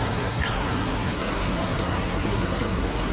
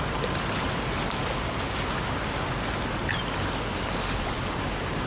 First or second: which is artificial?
first